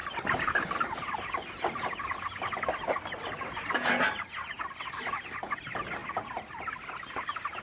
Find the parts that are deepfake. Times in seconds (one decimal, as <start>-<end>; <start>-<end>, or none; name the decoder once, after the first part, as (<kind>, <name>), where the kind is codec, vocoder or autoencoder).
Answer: none